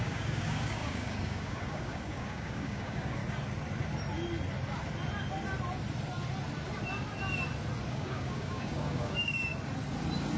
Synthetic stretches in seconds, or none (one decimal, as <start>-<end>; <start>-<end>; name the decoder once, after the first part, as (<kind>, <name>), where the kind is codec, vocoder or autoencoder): 0.0-3.2 (codec, DAC); 7.9-9.5